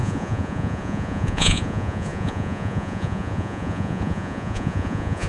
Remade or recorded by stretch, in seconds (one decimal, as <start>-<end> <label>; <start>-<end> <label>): 0.0-5.3 remade